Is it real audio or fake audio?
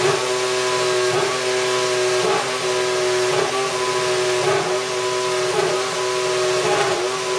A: real